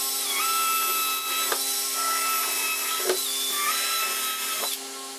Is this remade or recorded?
recorded